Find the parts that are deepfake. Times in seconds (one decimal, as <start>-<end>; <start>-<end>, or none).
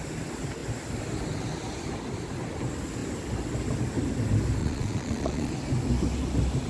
4.6-5.5